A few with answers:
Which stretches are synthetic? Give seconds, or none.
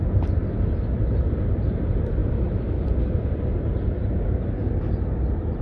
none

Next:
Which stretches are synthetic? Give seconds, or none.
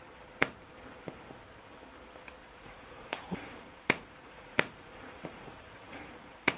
2.4-6.6 (vocoder, Vocos)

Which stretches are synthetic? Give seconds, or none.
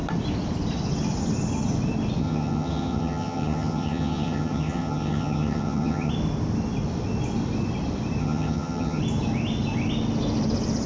2.2-6.1 (vocoder, HiFi-GAN); 8.2-9.0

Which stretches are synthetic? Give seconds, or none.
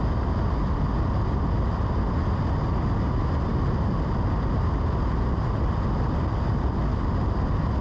none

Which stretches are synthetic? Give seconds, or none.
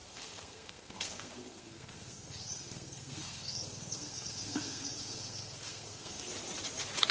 0.0-6.3 (codec, SNAC)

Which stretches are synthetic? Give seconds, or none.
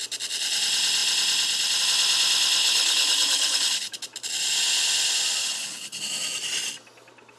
2.6-3.9 (codec, HILCodec); 5.4-6.0